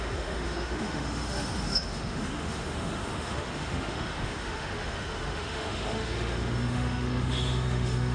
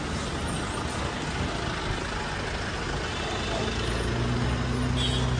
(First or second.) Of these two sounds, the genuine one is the second